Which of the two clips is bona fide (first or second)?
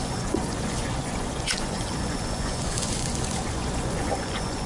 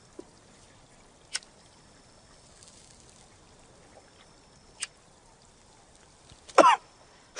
second